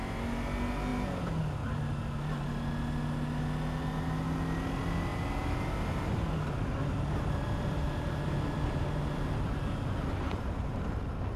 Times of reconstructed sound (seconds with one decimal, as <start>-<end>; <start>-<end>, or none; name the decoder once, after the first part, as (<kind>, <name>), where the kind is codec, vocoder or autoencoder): none

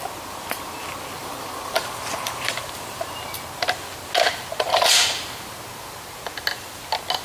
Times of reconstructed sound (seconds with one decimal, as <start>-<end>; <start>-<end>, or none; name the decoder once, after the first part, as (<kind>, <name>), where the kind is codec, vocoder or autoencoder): 1.2-3.2 (vocoder, BigVGAN v2)

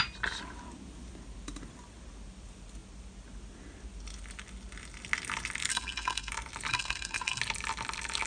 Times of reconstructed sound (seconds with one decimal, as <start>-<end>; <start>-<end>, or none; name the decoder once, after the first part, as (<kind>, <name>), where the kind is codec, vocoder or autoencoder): 5.7-6.3 (codec, SNAC); 6.7-7.4

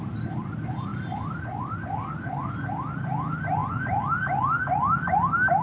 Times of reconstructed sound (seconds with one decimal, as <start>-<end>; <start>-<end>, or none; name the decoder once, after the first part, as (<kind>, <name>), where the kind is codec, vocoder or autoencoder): none

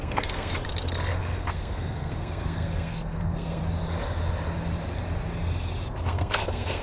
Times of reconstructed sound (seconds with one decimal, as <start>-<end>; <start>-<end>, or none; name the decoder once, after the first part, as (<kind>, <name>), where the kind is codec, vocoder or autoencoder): 0.0-0.5 (codec, SNAC); 1.2-3.6; 6.0-6.8

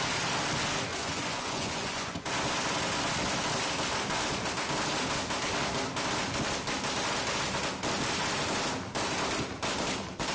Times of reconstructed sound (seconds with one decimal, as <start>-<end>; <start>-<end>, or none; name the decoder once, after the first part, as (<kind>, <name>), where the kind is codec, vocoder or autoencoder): 0.9-2.3 (vocoder, Vocos)